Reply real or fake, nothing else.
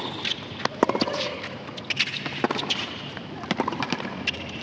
real